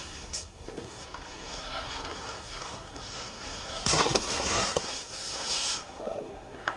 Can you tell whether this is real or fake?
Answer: fake